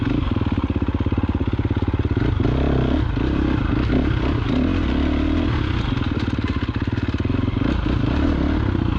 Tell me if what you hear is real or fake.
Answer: real